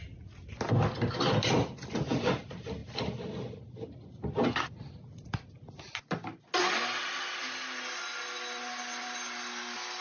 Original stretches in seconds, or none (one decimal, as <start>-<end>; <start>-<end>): 0.0-10.0